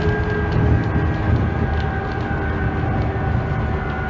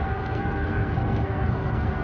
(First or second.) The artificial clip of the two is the second